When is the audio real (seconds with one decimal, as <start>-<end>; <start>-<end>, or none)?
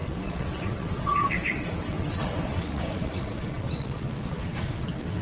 none